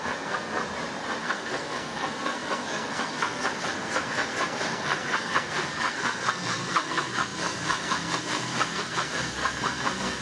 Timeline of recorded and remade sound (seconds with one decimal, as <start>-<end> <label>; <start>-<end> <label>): 0.0-0.6 remade; 0.6-1.2 recorded; 1.2-10.2 remade